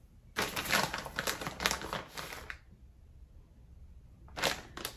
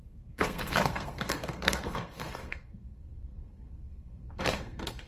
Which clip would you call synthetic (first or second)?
second